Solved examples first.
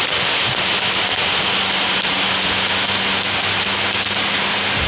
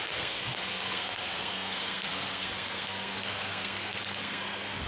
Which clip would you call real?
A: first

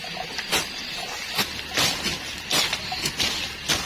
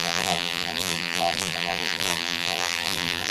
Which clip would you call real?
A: first